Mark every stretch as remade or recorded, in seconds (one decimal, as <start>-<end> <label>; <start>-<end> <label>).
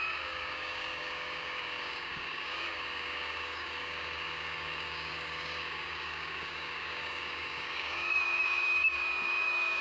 0.0-9.8 remade